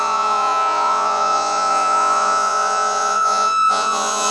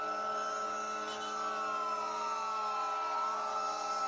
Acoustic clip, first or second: second